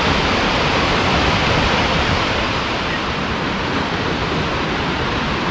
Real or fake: fake